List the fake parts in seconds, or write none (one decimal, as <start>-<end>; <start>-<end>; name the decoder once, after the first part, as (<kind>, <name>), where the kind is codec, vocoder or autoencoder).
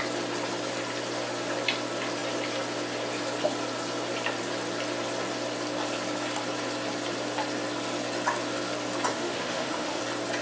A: 9.1-10.0 (autoencoder, DAC-VAE)